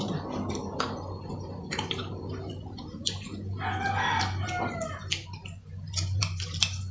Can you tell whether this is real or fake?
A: real